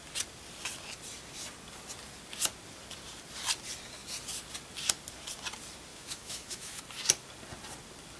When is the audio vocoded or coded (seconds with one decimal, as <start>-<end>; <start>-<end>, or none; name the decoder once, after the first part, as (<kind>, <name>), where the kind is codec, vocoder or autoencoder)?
5.9-6.8 (autoencoder, DAC-VAE)